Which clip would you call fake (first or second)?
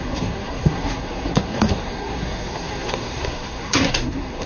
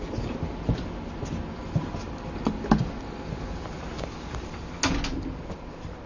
first